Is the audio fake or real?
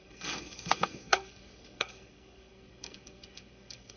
fake